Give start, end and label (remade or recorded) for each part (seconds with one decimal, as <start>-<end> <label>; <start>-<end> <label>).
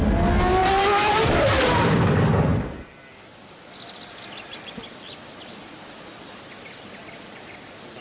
0.0-0.6 recorded; 0.6-1.3 remade; 1.3-8.0 recorded